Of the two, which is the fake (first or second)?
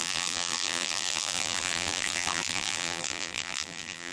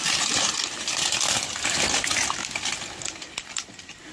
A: first